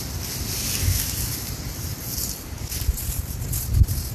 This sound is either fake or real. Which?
real